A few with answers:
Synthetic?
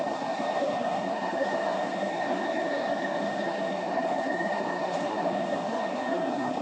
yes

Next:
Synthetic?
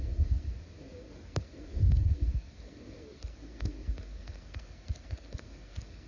yes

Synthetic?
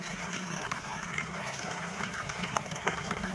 yes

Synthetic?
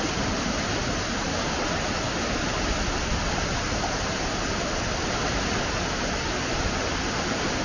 no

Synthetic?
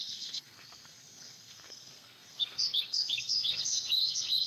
yes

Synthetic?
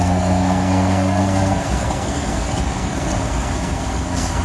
yes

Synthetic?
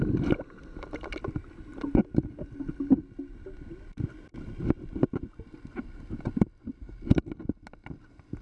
no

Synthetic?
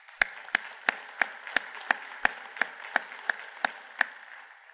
no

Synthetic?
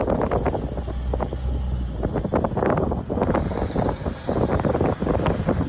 no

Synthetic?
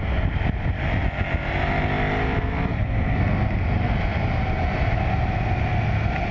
no